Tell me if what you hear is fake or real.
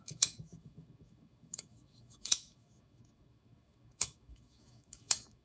fake